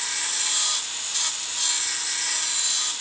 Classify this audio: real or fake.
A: real